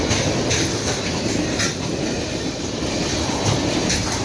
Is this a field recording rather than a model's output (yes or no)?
yes